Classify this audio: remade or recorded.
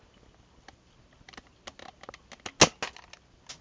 recorded